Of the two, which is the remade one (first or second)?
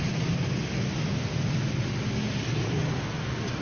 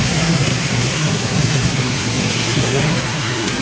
second